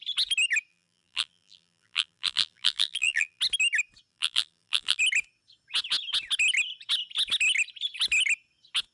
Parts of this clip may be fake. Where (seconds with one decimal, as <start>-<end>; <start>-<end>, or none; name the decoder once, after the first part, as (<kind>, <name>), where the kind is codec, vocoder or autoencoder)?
0.7-3.4 (vocoder, BigVGAN v2); 4.1-5.0